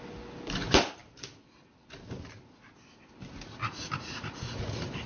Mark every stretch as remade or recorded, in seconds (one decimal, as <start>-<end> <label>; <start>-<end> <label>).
0.0-3.6 recorded; 3.6-5.1 remade